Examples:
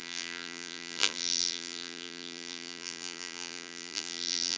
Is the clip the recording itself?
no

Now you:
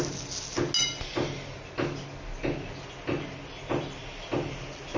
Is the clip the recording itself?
yes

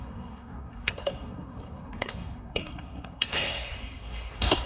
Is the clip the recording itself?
no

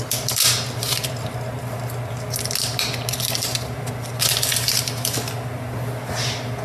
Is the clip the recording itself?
yes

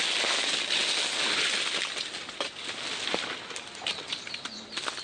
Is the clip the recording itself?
yes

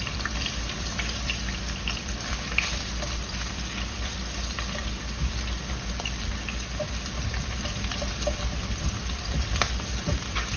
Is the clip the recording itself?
no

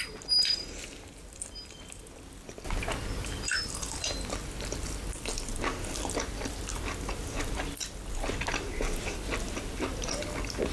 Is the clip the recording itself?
yes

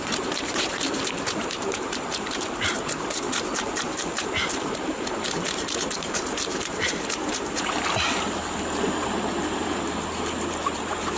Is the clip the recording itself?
no